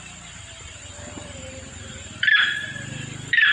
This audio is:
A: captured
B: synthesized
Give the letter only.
B